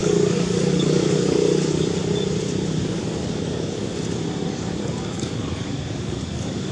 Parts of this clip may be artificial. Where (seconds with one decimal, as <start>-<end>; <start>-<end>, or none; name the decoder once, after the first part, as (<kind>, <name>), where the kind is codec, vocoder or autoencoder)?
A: 0.0-2.0 (codec, DAC); 2.8-3.9; 4.5-6.7

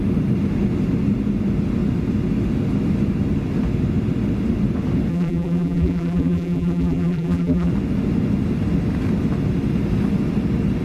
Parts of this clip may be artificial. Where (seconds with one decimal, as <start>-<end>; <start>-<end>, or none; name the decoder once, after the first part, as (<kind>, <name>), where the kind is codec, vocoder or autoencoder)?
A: 5.1-7.7 (vocoder, BigVGAN v2)

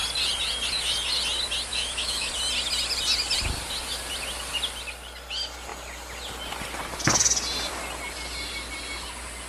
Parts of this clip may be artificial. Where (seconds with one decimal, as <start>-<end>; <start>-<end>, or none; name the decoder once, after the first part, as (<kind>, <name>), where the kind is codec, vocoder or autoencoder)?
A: 1.7-2.3 (autoencoder, DAC-VAE)

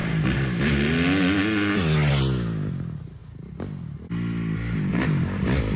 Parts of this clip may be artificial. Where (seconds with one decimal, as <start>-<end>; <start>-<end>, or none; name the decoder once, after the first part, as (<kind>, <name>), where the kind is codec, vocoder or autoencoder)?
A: none

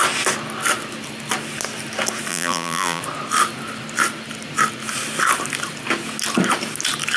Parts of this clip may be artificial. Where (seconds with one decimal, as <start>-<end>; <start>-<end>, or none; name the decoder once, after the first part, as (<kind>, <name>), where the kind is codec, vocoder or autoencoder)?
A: 2.3-3.0 (vocoder, BigVGAN v2)

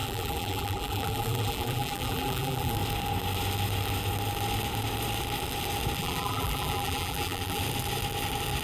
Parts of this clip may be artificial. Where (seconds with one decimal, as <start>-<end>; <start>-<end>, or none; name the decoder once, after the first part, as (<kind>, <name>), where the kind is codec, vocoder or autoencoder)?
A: 0.0-2.7 (vocoder, BigVGAN v2); 6.0-7.6

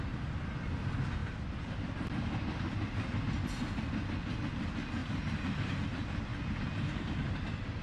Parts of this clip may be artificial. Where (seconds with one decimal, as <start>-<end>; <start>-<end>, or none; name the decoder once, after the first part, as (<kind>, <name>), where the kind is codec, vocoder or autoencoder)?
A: 5.0-5.8 (vocoder, BigVGAN v2)